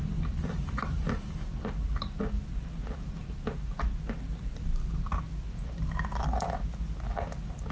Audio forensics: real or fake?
real